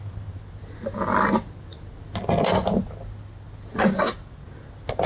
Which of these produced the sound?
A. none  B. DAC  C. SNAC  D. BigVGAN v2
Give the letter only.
A